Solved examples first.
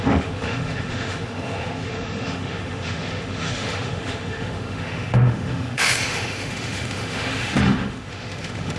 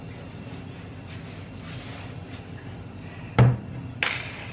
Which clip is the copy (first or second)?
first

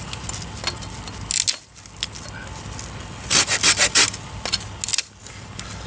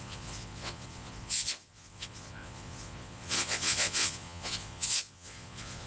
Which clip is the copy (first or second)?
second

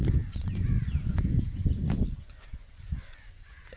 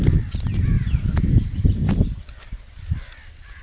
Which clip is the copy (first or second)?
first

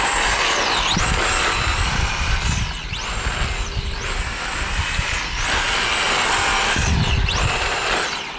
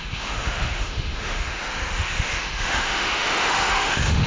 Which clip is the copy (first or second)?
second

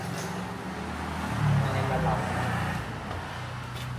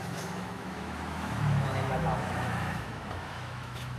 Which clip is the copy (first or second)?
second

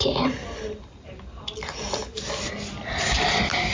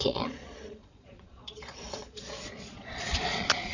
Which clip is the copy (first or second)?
second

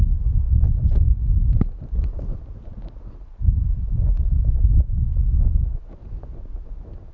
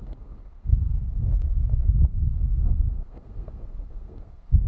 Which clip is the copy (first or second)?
second